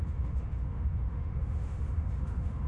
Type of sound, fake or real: fake